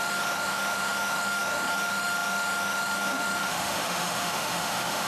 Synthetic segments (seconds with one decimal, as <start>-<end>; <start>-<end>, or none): 0.0-5.1

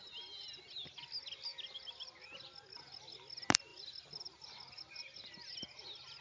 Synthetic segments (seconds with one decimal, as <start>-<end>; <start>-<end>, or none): 1.5-2.8; 3.7-5.0

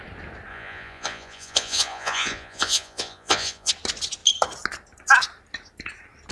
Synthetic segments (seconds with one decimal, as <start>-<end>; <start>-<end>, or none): 0.5-3.7